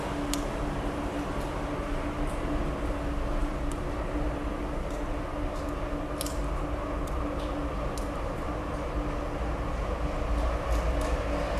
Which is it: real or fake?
real